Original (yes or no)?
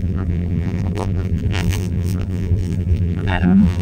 no